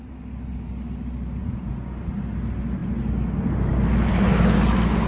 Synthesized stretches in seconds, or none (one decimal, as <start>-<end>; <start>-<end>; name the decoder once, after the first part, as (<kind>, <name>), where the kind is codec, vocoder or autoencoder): 1.4-2.0 (vocoder, Vocos)